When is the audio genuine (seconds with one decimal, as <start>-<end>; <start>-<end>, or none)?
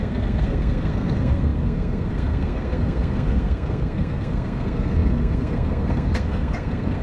none